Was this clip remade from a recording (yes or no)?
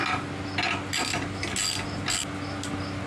no